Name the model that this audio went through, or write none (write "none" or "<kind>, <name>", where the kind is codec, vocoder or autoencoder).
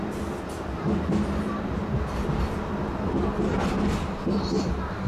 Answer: none